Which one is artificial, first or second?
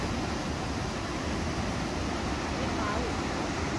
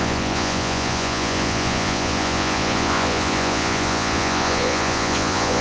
second